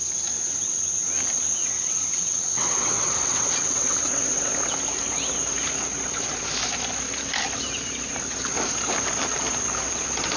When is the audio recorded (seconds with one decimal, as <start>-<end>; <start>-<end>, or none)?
0.0-1.6; 4.5-10.4